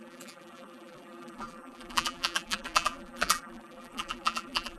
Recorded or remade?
remade